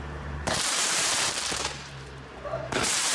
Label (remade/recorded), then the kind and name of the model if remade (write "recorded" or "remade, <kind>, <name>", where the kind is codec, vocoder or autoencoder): remade, vocoder, BigVGAN v2